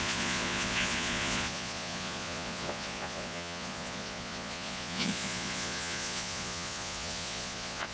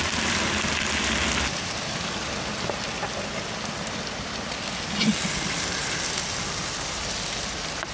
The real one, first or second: second